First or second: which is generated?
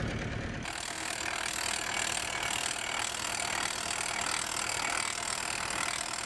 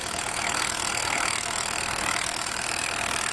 second